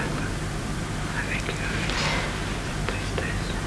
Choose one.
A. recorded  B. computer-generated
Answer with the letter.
A